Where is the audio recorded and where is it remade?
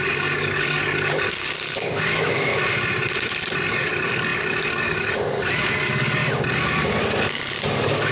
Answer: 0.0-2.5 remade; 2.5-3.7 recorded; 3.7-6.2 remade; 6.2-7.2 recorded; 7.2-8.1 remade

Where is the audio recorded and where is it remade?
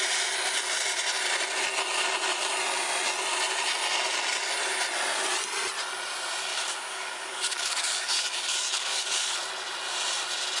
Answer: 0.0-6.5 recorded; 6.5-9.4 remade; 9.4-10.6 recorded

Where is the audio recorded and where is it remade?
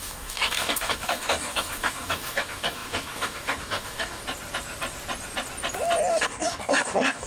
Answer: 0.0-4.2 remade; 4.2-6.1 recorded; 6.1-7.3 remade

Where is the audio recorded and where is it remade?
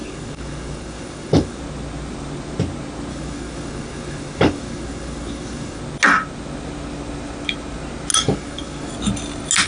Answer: 0.0-1.6 remade; 1.6-3.1 recorded; 3.1-5.8 remade; 5.8-8.1 recorded; 8.1-8.9 remade; 8.9-9.7 recorded